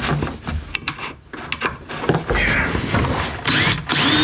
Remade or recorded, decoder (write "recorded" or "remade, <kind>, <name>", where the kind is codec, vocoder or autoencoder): recorded